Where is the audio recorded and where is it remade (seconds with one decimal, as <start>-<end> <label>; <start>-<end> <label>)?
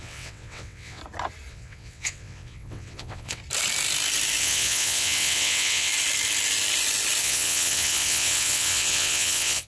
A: 0.0-1.0 remade; 1.0-1.5 recorded; 1.5-3.4 remade; 3.4-4.4 recorded; 4.4-5.9 remade; 5.9-7.2 recorded; 7.2-9.7 remade